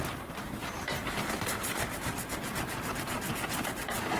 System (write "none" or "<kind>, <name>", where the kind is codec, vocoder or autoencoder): vocoder, BigVGAN v2